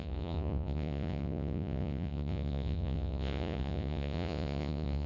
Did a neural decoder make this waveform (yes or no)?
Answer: yes